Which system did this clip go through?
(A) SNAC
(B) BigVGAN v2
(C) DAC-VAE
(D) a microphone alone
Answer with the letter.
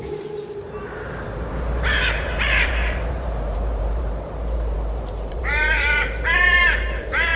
B